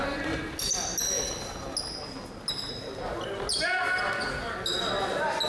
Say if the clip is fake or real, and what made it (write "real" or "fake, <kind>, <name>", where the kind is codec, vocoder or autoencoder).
real